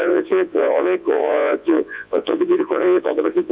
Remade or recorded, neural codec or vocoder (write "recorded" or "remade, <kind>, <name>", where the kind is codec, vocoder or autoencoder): remade, vocoder, Vocos